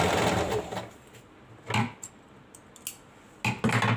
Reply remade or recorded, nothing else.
recorded